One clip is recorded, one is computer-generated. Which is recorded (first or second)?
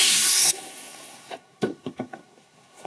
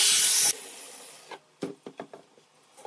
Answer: second